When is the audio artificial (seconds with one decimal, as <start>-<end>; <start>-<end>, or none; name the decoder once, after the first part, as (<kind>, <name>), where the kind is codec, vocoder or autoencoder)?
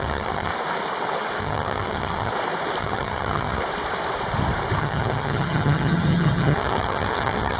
0.0-0.5 (vocoder, HiFi-GAN); 1.4-2.3; 2.8-3.6; 4.8-7.6